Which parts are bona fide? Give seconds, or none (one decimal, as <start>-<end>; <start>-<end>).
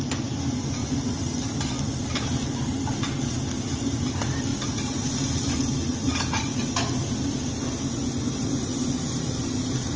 0.0-0.8; 1.6-4.5; 6.5-10.0